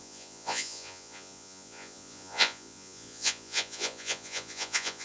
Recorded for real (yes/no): no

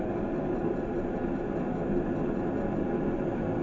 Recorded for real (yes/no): yes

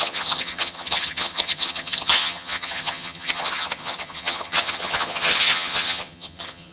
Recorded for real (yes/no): no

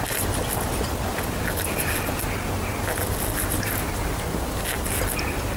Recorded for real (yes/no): yes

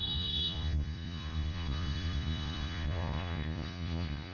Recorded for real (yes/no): no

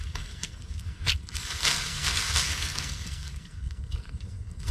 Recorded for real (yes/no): no